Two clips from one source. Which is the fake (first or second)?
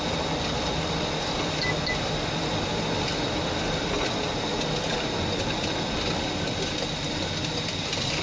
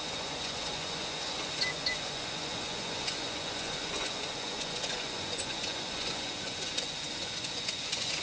second